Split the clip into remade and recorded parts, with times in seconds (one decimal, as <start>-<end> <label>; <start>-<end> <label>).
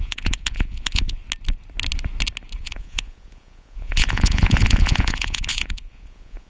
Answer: 0.0-1.2 remade; 1.2-2.6 recorded; 2.6-6.5 remade